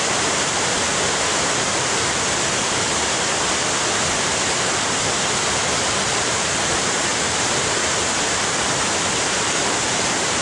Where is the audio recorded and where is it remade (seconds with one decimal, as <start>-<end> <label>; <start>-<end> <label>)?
0.0-0.9 remade; 0.9-3.9 recorded; 3.9-10.4 remade